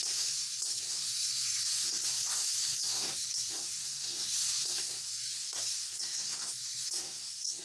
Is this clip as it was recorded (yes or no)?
no